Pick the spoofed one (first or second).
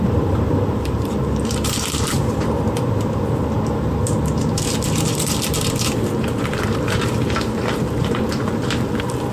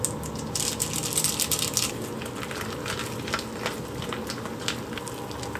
first